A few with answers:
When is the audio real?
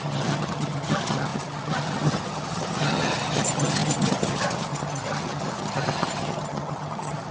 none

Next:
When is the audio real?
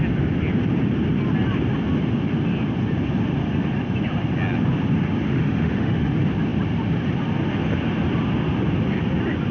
0.0-5.3; 6.1-9.5